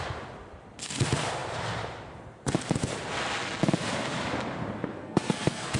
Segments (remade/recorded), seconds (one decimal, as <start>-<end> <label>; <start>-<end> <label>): 0.0-5.0 recorded; 5.0-5.8 remade